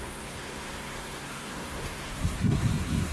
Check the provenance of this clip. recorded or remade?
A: remade